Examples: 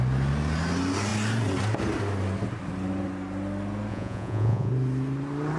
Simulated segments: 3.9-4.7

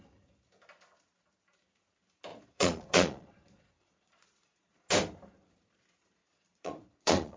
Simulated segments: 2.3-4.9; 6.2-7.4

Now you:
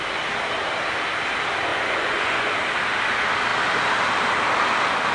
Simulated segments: 1.7-2.5

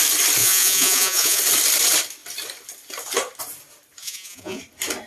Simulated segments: 0.4-1.4; 4.0-4.6

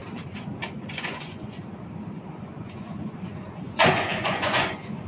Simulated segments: 0.5-1.6; 2.3-5.1